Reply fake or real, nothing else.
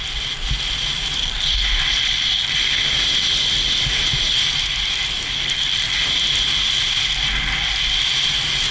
real